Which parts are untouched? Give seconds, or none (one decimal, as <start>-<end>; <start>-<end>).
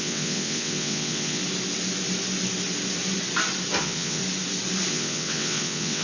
1.4-3.8; 4.2-4.9